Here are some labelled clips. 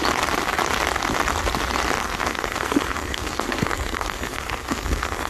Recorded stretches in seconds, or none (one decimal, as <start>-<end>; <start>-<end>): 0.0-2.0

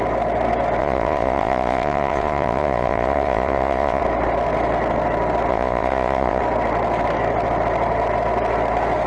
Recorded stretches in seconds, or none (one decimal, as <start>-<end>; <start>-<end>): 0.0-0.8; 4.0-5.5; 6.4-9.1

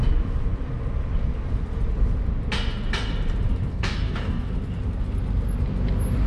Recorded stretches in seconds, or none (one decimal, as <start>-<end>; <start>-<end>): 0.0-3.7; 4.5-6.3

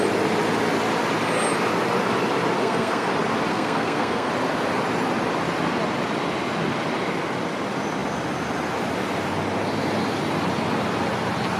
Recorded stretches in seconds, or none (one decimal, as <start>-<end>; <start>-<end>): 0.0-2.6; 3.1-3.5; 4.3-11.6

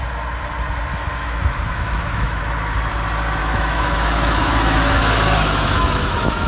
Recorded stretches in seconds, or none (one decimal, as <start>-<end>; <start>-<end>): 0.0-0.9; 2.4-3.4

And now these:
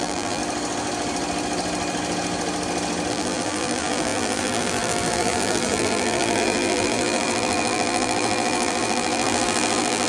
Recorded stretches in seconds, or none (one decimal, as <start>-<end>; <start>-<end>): 0.4-3.1

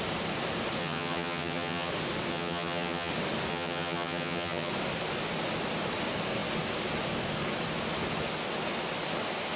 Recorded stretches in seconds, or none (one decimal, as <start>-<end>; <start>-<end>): 0.0-0.8; 1.9-2.3; 3.1-3.5; 4.7-9.6